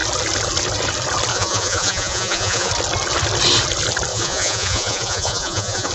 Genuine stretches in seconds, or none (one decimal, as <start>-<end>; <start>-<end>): 0.0-1.3; 2.7-4.1